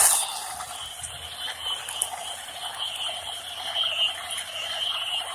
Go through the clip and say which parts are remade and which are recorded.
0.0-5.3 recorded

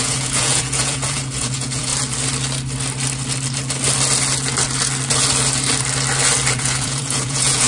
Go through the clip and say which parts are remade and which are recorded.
0.0-1.9 remade; 1.9-6.5 recorded; 6.5-7.7 remade

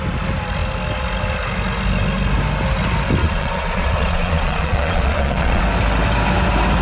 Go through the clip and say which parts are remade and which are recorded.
0.0-3.2 recorded; 3.2-5.6 remade; 5.6-6.8 recorded

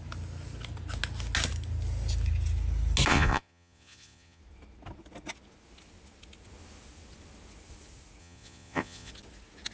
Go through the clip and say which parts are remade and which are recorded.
0.0-3.1 recorded; 3.1-4.4 remade; 4.4-8.2 recorded; 8.2-9.1 remade; 9.1-9.7 recorded

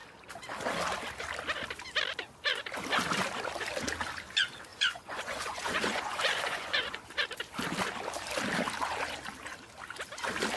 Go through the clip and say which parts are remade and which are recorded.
0.0-4.7 recorded; 4.7-7.0 remade; 7.0-10.6 recorded